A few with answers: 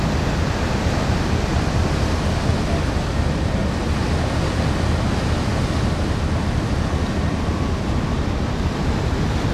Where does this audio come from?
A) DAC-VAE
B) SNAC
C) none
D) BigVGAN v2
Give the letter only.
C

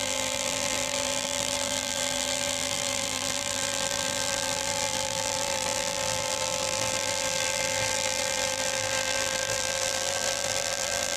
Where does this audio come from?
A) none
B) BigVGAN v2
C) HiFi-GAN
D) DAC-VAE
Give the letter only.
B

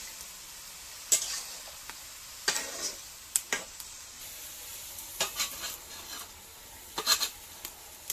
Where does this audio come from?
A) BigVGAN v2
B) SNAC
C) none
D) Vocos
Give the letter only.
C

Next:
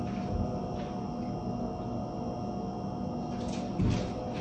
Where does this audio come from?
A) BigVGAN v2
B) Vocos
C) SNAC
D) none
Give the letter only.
D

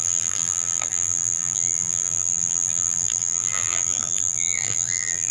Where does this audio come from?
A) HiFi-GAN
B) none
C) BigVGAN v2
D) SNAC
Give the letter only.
C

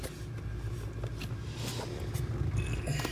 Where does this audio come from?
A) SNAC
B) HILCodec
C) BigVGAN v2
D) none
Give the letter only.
D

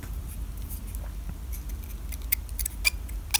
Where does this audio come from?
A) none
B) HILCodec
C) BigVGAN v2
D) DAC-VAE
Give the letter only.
A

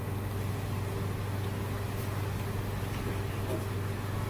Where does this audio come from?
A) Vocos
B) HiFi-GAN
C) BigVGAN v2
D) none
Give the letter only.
D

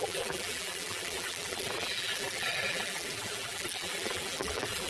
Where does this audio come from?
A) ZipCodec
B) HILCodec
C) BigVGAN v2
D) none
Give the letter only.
C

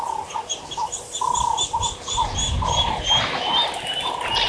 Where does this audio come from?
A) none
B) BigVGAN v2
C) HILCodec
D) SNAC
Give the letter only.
A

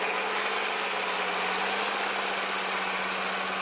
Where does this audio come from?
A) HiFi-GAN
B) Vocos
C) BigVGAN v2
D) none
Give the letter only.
D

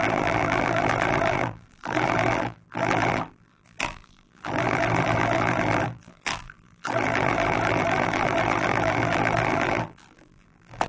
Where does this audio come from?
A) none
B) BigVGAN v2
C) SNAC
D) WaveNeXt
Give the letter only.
B